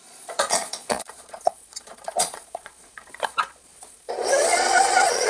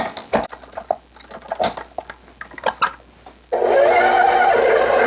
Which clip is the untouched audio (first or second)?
second